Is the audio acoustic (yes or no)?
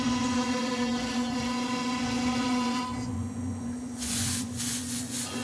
no